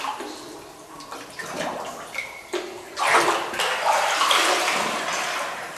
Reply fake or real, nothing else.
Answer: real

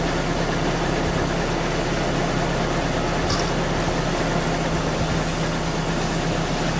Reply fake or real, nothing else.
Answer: real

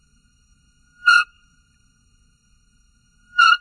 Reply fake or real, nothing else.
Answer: fake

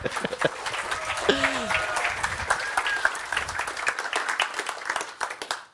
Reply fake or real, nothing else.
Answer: real